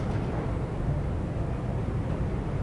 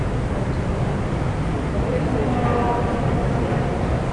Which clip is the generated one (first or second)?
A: first